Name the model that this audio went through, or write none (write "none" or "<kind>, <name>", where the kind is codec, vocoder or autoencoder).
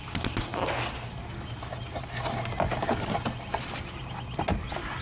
none